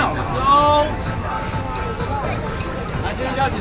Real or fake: real